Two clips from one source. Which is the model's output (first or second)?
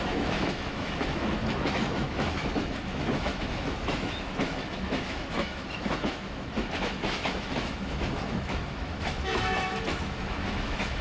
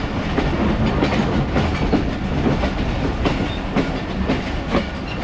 first